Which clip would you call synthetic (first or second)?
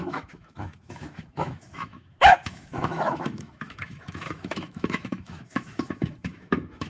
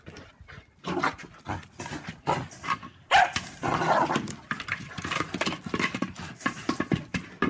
first